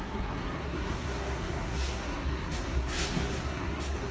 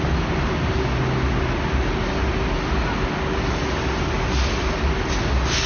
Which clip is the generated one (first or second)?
first